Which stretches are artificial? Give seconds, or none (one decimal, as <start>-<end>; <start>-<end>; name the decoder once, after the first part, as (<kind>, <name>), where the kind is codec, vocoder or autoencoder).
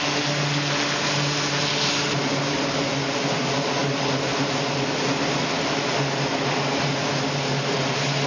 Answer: none